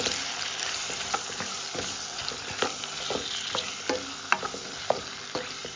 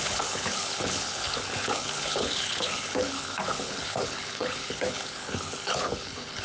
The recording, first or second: first